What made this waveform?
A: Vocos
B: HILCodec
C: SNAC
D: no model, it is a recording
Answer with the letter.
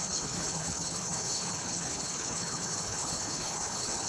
B